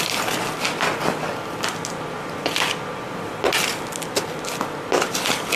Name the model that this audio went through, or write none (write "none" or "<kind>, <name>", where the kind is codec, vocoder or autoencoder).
none